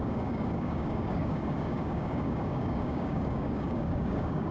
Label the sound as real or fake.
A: fake